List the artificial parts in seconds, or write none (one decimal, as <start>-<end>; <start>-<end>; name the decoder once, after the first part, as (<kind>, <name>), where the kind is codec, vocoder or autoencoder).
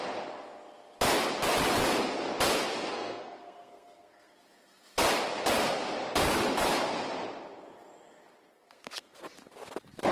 2.9-4.3 (codec, SNAC); 8.5-9.2